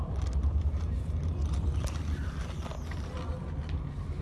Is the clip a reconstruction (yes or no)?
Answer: no